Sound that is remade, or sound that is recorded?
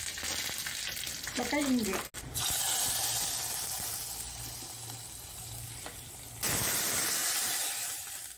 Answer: recorded